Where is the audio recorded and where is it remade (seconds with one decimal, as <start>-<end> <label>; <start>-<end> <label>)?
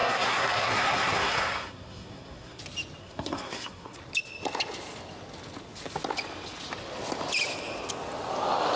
0.0-2.6 remade; 2.6-3.0 recorded; 3.0-4.0 remade; 4.0-8.8 recorded